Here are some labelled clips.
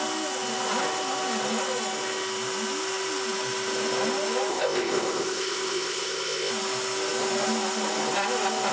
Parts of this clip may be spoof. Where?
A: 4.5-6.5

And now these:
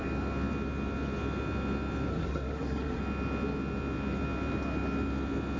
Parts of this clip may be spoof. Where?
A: 2.1-3.0

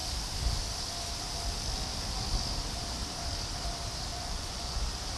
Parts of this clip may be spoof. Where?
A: 4.1-4.8

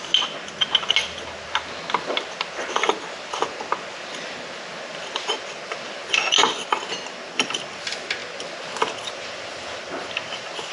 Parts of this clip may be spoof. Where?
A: none

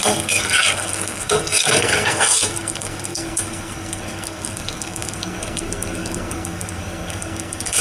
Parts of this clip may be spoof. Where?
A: 0.0-7.8

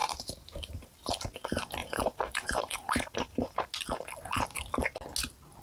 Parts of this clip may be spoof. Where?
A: 0.0-1.1; 1.8-3.7

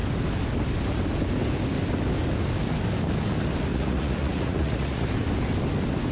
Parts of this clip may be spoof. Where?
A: 3.7-5.1

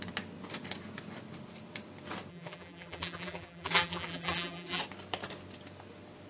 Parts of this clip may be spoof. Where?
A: 2.3-4.8